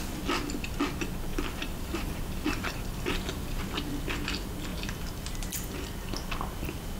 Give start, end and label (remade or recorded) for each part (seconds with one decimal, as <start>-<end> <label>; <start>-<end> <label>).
0.0-1.3 recorded; 1.3-3.6 remade; 3.6-4.7 recorded; 4.7-5.5 remade; 5.5-7.0 recorded